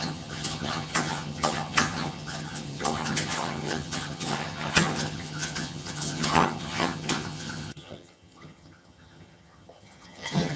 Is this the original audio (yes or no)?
no